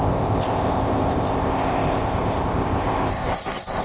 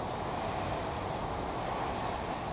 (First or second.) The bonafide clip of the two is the second